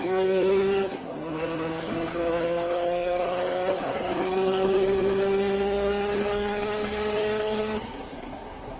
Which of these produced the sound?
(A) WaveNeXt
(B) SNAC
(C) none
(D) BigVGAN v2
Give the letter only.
B